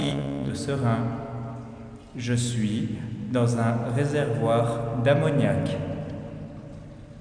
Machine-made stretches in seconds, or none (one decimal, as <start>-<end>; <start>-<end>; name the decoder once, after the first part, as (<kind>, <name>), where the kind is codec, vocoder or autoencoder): 0.0-0.5 (vocoder, WaveNeXt)